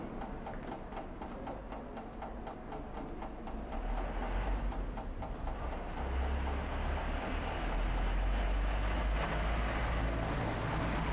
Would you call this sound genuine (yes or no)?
yes